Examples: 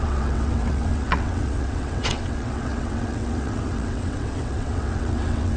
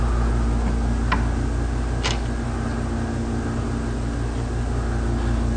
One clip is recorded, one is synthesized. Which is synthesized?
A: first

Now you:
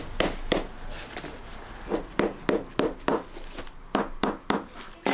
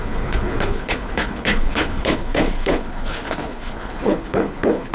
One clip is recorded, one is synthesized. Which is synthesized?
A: second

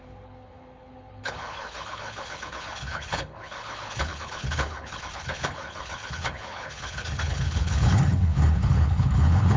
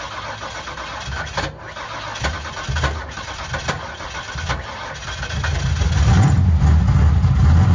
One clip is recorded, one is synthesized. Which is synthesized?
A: first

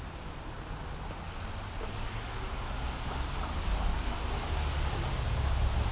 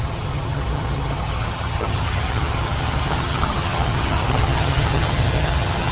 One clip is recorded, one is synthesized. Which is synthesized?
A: second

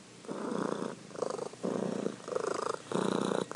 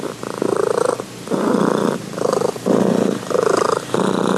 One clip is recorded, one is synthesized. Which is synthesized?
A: first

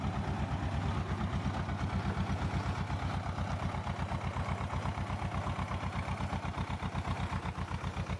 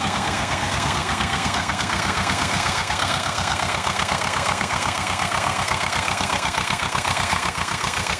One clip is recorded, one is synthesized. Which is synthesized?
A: second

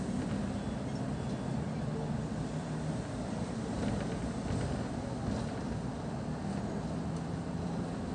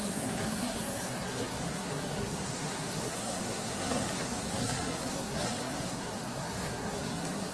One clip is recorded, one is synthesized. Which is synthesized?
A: second